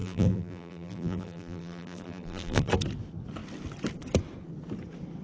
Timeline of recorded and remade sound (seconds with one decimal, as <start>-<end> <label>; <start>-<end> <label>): 0.0-2.7 remade; 2.7-5.2 recorded